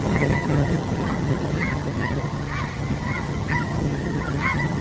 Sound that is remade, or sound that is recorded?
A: remade